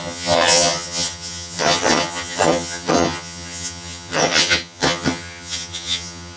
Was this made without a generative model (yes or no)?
no